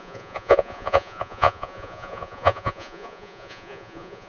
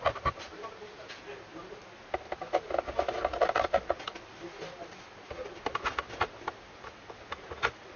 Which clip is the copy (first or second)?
first